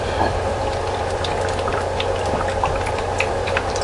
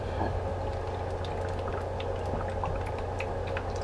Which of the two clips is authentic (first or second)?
second